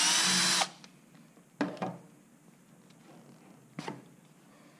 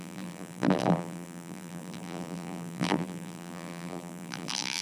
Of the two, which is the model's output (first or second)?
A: second